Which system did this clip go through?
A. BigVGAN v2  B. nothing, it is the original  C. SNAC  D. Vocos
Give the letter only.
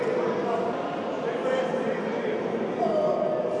B